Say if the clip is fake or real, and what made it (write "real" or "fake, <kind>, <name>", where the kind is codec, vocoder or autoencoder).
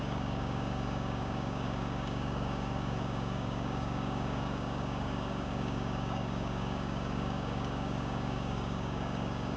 fake, codec, DAC